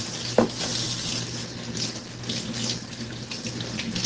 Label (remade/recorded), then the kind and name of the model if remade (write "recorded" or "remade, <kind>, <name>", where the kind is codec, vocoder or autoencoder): recorded